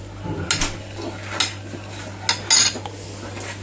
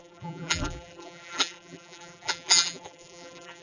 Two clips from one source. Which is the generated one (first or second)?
second